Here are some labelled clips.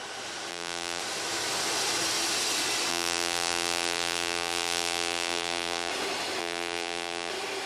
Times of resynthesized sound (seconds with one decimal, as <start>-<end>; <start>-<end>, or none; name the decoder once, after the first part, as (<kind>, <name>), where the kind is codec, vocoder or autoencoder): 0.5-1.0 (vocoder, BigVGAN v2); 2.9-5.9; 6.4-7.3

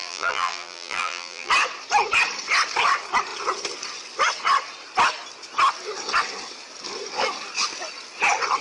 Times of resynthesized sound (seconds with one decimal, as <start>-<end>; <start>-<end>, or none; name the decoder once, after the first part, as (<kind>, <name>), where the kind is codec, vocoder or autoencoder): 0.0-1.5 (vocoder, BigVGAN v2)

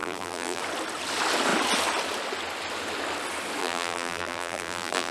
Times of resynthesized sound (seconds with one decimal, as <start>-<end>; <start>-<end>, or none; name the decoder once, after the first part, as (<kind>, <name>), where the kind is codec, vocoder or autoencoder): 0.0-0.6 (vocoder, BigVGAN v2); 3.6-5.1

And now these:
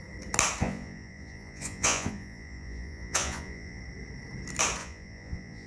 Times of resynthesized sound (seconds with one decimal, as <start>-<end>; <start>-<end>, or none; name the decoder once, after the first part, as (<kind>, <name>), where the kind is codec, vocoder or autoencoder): 0.6-3.8 (vocoder, Vocos); 4.8-5.7

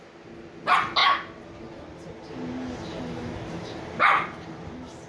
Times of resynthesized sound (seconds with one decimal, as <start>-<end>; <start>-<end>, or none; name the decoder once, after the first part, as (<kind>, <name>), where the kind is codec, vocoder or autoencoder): none

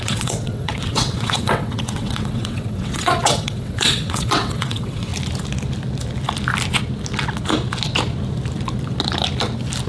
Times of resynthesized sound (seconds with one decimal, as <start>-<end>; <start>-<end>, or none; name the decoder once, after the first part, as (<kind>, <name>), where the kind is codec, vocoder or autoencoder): 0.0-5.1 (vocoder, WaveNeXt)

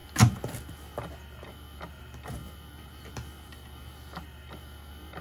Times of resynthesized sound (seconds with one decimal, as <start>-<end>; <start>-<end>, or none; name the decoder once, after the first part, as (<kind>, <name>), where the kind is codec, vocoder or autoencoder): none

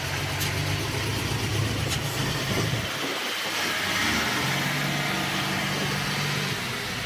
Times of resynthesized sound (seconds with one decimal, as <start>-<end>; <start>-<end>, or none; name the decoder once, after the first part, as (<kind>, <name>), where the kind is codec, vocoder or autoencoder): 1.1-4.0 (vocoder, BigVGAN v2)